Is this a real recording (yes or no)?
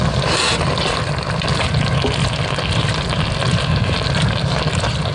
yes